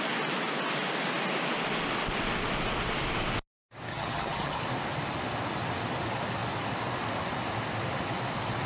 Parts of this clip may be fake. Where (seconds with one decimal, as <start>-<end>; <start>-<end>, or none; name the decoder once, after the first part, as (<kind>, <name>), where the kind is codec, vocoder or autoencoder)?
3.9-4.6 (vocoder, HiFi-GAN)